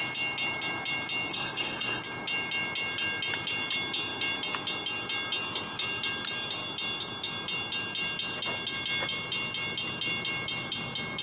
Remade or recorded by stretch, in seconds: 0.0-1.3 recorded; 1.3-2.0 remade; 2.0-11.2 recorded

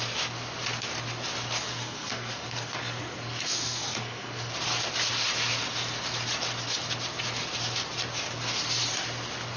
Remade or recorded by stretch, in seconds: 0.0-1.7 recorded; 1.7-4.5 remade; 4.5-9.6 recorded

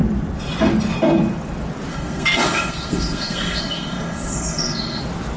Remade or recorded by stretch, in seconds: 0.0-1.9 recorded; 1.9-5.0 remade; 5.0-5.4 recorded

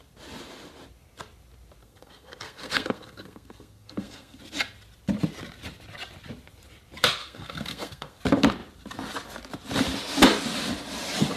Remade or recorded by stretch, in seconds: 0.0-1.8 recorded; 1.8-4.4 remade; 4.4-7.2 recorded; 7.2-8.2 remade; 8.2-11.4 recorded